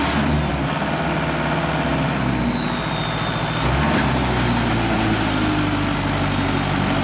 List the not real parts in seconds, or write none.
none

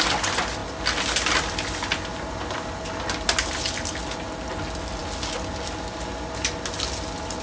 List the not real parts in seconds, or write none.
none